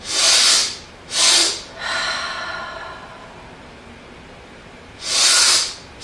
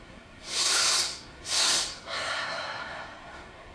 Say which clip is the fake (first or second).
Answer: second